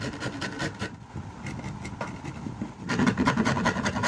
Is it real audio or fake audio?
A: real